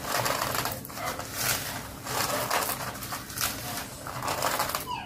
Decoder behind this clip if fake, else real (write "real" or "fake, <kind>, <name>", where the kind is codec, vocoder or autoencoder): real